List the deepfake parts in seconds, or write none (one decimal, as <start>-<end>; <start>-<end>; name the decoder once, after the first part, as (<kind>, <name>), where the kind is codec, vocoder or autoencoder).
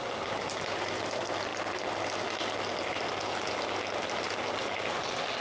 none